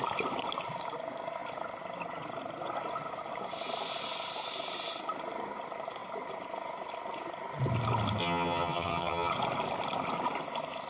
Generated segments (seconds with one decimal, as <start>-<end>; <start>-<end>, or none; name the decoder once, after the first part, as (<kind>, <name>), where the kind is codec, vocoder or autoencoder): 8.2-9.3 (vocoder, HiFi-GAN)